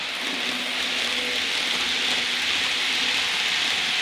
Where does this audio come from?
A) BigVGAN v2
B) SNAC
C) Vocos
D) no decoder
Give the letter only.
D